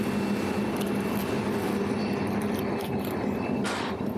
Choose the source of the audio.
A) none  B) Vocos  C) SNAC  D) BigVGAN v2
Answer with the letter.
A